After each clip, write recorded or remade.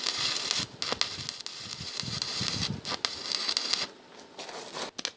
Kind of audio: recorded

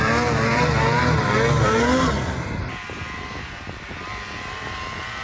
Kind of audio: remade